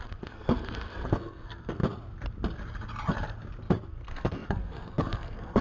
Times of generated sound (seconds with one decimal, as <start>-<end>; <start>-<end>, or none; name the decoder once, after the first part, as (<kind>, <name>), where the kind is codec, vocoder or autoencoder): 0.0-1.8 (codec, SNAC); 3.9-5.6